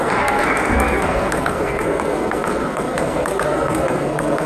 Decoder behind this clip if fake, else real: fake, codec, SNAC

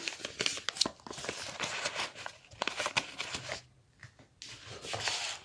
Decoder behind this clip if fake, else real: real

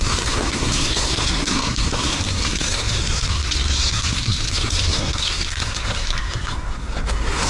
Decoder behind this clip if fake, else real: fake, codec, SNAC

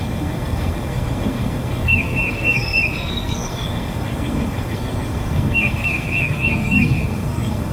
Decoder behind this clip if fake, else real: fake, codec, SNAC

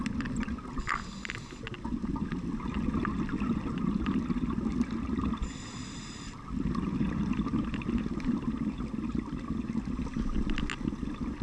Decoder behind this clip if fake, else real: real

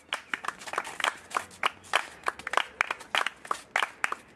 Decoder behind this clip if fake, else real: real